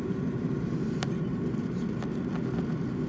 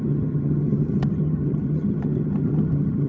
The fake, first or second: second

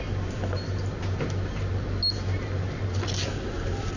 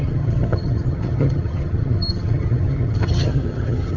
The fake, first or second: second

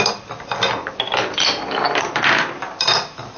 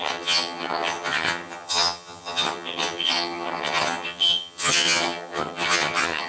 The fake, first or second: second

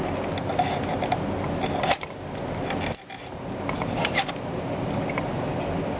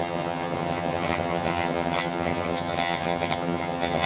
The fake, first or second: second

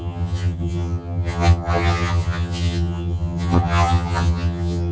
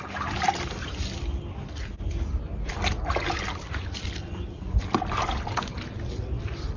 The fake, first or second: first